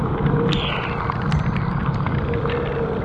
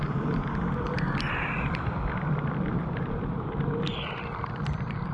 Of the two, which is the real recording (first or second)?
first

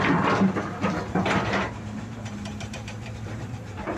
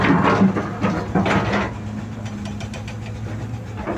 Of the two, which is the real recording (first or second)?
second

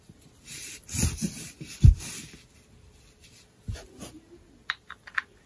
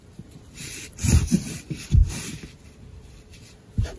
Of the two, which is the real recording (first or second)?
first